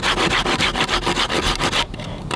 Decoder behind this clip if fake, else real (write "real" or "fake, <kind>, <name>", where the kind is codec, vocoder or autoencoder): real